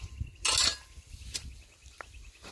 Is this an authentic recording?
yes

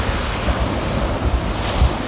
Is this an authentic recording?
yes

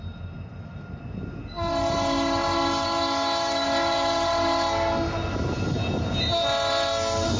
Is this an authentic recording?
yes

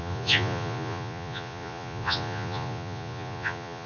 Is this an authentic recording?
no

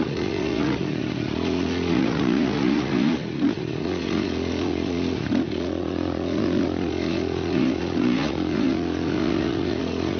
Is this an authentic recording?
no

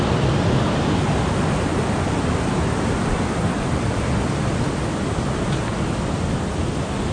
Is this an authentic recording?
yes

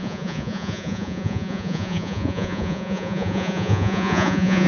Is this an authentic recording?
no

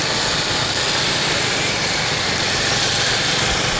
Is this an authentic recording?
yes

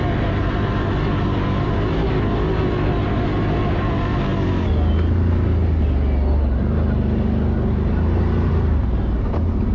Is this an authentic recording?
yes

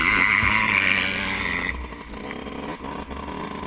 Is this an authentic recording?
yes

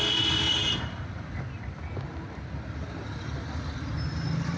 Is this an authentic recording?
yes